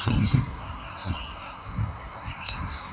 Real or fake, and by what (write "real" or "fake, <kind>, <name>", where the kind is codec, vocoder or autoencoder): fake, codec, SNAC